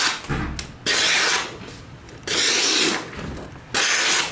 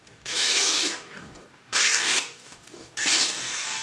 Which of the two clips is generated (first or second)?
second